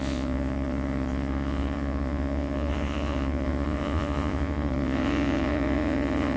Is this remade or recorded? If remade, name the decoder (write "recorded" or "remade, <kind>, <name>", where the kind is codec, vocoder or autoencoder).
remade, vocoder, Vocos